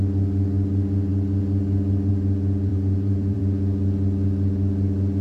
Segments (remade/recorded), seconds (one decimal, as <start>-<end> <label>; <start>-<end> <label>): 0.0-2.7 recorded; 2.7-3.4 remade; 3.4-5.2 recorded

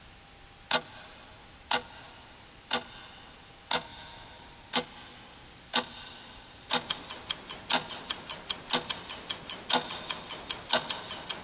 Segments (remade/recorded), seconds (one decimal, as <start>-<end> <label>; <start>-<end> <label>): 0.0-3.9 recorded; 3.9-6.7 remade; 6.7-11.4 recorded

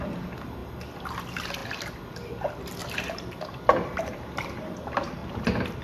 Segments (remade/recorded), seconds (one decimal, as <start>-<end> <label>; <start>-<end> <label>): 0.0-2.8 recorded; 2.8-4.6 remade; 4.6-5.2 recorded; 5.2-5.8 remade

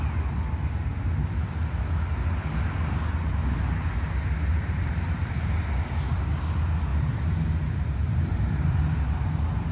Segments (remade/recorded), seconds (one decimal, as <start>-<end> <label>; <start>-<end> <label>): 0.0-4.5 recorded; 4.5-5.9 remade; 5.9-6.9 recorded; 6.9-8.8 remade; 8.8-9.7 recorded